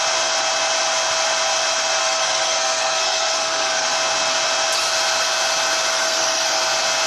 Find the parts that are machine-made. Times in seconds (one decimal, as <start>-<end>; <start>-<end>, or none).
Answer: 2.0-3.9; 5.9-6.6